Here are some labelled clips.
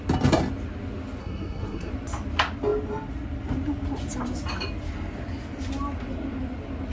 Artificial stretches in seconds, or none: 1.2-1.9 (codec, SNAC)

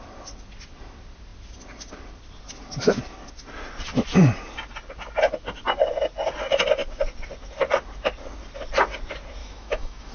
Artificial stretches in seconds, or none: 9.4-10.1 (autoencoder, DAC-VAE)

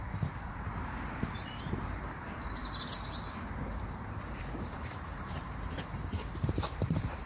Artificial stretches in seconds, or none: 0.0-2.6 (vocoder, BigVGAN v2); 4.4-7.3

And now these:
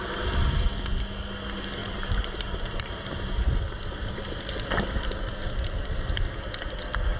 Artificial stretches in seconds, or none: 1.8-3.3 (vocoder, BigVGAN v2)

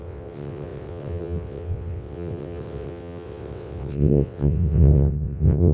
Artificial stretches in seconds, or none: 0.0-5.7 (vocoder, WaveNeXt)

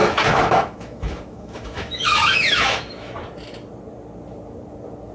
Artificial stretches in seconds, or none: 0.0-3.1 (autoencoder, DAC-VAE)

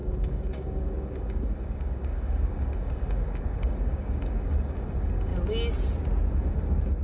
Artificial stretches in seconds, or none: 0.0-5.3 (codec, DAC); 6.3-7.0